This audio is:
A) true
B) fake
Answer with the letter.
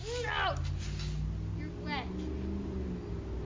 A